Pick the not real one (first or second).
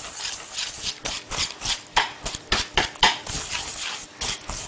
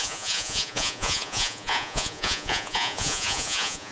second